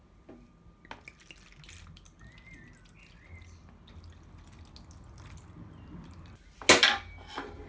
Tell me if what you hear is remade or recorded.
recorded